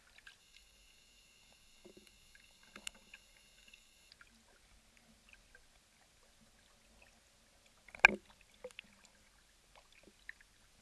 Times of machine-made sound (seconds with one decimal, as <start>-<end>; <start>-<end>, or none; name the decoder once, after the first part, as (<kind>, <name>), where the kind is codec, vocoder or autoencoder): 0.4-4.1 (codec, DAC)